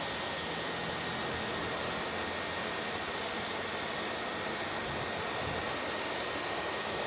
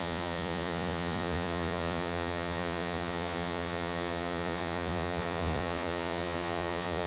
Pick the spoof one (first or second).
second